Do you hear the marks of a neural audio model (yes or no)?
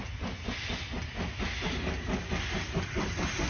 no